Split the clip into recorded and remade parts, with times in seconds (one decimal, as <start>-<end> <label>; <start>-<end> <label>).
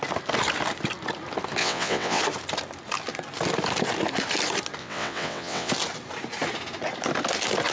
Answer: 0.0-1.6 recorded; 1.6-2.2 remade; 2.2-4.8 recorded; 4.8-5.7 remade; 5.7-7.7 recorded